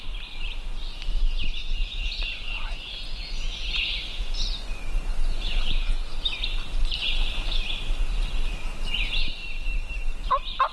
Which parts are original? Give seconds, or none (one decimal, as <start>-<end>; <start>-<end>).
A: 0.0-1.6; 6.0-7.0; 7.6-10.7